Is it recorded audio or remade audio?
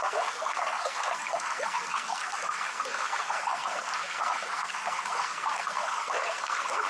remade